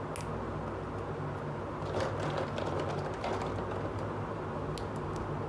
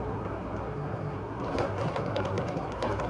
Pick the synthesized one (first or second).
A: second